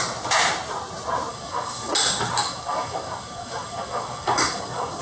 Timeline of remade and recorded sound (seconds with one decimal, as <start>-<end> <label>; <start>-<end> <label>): 0.0-1.3 recorded; 1.3-1.9 remade; 1.9-2.4 recorded; 2.4-5.0 remade